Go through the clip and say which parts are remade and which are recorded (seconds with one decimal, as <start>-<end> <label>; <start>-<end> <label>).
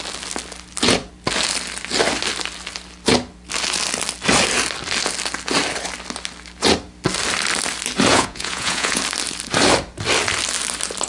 0.0-8.1 recorded; 8.1-9.0 remade; 9.0-11.1 recorded